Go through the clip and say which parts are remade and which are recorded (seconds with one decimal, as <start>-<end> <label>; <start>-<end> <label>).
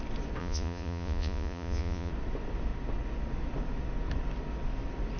0.0-0.4 recorded; 0.4-2.1 remade; 2.1-5.2 recorded